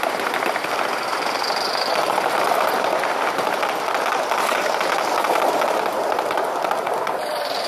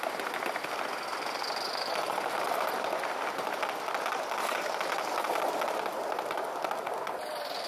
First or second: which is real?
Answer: second